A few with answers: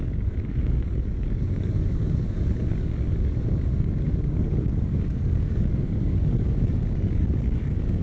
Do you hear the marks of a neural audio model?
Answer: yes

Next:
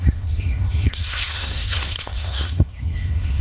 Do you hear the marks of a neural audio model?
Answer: yes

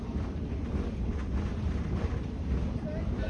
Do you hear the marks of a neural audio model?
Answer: no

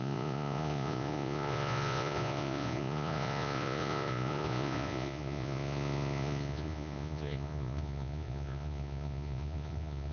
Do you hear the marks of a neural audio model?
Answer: yes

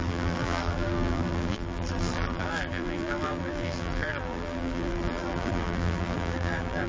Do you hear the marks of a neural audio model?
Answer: yes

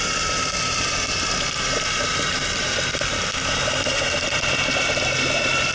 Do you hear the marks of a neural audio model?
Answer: yes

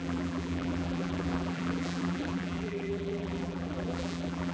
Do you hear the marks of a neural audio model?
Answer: yes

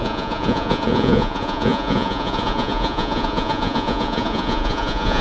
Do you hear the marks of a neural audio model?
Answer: yes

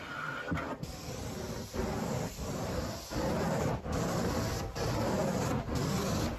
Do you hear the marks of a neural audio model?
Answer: yes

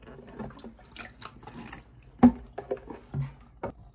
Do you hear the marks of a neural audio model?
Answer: no